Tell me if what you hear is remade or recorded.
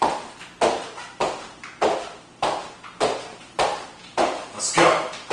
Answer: recorded